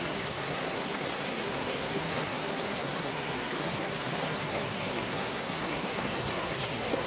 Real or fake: fake